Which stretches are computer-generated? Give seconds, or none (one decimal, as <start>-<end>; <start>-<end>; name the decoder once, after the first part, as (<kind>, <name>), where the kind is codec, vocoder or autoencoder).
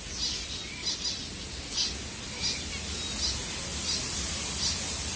none